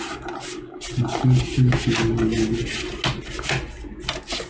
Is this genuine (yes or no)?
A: yes